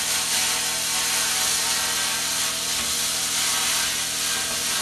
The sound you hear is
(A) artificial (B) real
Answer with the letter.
B